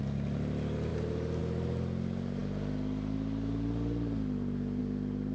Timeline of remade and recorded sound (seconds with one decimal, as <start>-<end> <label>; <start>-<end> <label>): 0.0-5.3 recorded